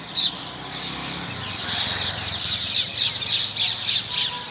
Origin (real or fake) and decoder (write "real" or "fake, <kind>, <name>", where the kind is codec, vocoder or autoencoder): real